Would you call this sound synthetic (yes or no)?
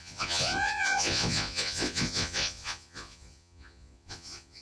yes